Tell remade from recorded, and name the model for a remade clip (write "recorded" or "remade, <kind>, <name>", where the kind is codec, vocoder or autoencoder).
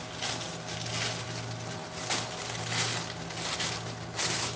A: recorded